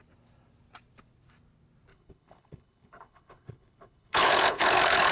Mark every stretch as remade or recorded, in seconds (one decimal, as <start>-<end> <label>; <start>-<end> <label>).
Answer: 0.0-1.9 recorded; 1.9-5.1 remade

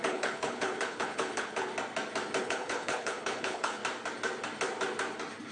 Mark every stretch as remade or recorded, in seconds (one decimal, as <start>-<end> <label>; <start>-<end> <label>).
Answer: 0.0-1.7 remade; 1.7-2.4 recorded; 2.4-3.8 remade; 3.8-5.5 recorded

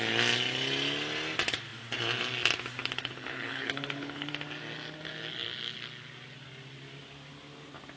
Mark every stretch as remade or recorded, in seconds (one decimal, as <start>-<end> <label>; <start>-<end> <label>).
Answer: 0.0-2.8 recorded; 2.8-4.3 remade; 4.3-8.0 recorded

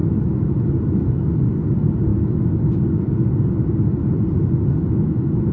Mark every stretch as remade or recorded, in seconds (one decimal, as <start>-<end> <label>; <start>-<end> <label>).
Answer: 0.0-5.5 recorded

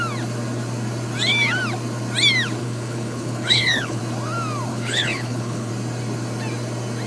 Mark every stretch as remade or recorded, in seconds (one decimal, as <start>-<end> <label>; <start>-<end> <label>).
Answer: 0.0-2.6 recorded; 2.6-4.0 remade; 4.0-4.7 recorded; 4.7-5.7 remade; 5.7-7.1 recorded

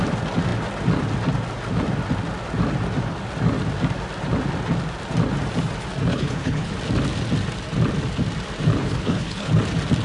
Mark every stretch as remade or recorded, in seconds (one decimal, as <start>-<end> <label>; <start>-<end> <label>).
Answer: 0.0-6.1 recorded; 6.1-6.7 remade; 6.7-8.8 recorded; 8.8-9.5 remade; 9.5-10.0 recorded

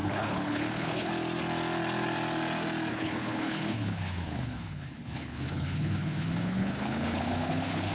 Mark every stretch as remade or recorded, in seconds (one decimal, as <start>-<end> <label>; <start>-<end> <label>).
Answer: 0.0-1.1 remade; 1.1-2.9 recorded; 2.9-7.9 remade